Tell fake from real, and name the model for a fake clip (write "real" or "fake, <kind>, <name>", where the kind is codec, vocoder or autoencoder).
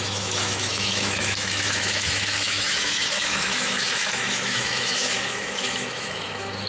fake, autoencoder, DAC-VAE